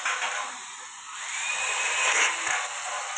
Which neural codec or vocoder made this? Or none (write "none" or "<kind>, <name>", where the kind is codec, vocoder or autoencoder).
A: none